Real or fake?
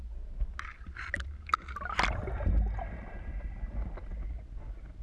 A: real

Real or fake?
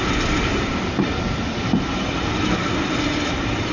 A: real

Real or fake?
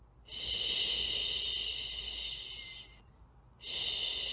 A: real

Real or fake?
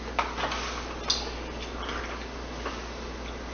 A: real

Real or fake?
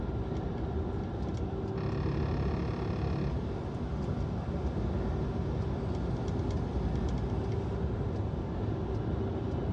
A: real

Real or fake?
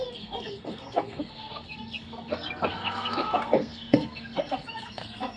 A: fake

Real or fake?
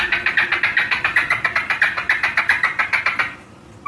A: real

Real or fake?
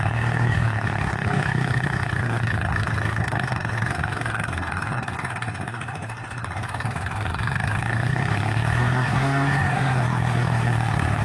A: fake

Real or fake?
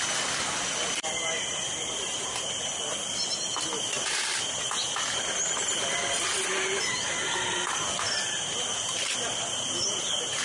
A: real